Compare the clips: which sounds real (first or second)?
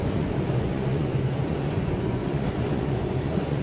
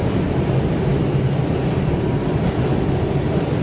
second